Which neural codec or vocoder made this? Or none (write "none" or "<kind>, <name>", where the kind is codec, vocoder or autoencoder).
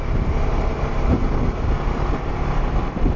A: none